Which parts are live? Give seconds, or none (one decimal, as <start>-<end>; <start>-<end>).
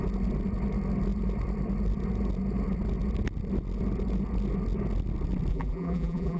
0.0-5.5